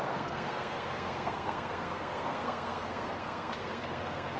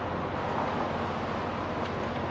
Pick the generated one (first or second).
first